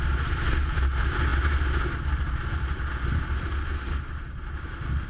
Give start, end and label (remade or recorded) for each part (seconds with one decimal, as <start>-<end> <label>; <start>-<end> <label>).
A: 0.0-5.1 recorded

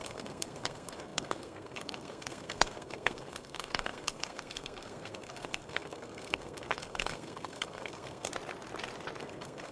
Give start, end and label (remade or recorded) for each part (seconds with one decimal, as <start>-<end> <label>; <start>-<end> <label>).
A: 0.0-8.3 remade; 8.3-9.2 recorded; 9.2-9.7 remade